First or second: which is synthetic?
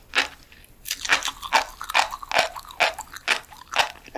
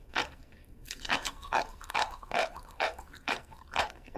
second